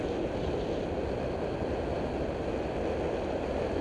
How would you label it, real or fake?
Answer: real